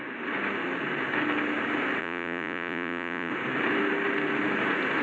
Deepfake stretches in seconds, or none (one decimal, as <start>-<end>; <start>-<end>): 2.0-3.3